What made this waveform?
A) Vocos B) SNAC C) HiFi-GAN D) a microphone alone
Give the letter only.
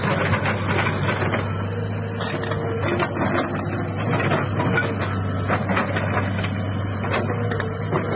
D